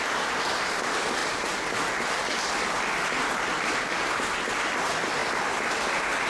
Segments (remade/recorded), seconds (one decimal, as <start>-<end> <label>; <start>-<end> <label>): 0.0-6.3 recorded